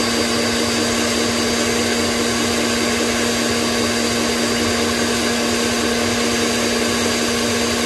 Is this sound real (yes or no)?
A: yes